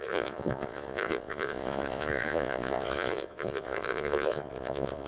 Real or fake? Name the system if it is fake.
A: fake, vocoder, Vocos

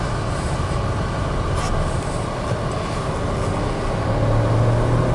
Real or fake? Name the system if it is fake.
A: real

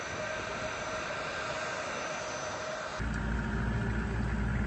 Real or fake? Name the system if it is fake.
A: real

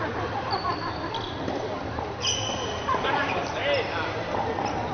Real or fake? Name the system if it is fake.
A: real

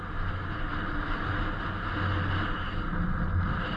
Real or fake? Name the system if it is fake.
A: real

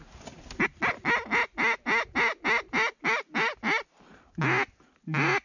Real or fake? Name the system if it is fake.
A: real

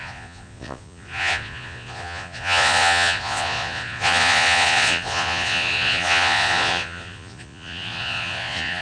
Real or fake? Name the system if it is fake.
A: fake, vocoder, Vocos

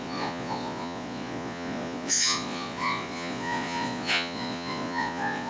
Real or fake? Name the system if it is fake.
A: fake, vocoder, Vocos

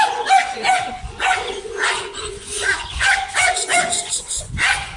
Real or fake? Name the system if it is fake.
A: fake, vocoder, Vocos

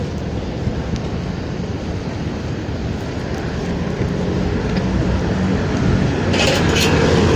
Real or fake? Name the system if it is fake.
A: real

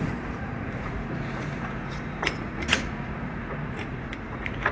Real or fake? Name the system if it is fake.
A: fake, vocoder, Vocos